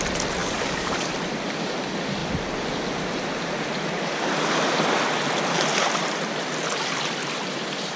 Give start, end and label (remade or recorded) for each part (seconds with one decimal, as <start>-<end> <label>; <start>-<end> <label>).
0.0-0.4 recorded; 0.4-1.1 remade; 1.1-8.0 recorded